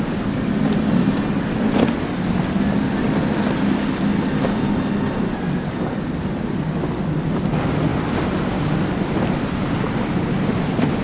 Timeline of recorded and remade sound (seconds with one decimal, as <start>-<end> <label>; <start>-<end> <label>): 0.0-11.0 recorded

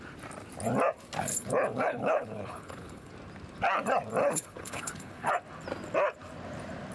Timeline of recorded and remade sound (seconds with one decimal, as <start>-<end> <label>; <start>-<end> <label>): 0.0-1.3 recorded; 1.3-3.1 remade; 3.1-4.2 recorded; 4.2-5.3 remade; 5.3-6.9 recorded

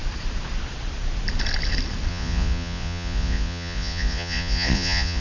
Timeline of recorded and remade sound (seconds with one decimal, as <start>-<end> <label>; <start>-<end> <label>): 0.0-2.1 recorded; 2.1-5.2 remade

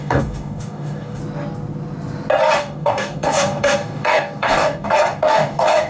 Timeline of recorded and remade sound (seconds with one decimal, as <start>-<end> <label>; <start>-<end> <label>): 0.0-1.2 remade; 1.2-2.6 recorded; 2.6-5.9 remade

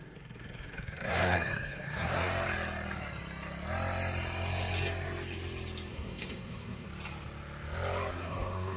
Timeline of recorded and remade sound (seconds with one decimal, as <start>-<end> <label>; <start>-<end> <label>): 0.0-2.3 remade; 2.3-5.9 recorded; 5.9-6.9 remade; 6.9-8.1 recorded; 8.1-8.8 remade

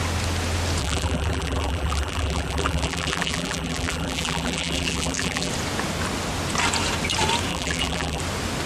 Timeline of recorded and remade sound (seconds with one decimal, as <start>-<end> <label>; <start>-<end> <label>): 0.0-0.8 recorded; 0.8-5.5 remade; 5.5-7.5 recorded; 7.5-8.2 remade; 8.2-8.7 recorded